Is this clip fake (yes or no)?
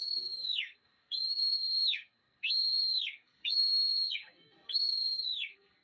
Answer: yes